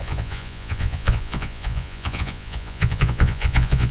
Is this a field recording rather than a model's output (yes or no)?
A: no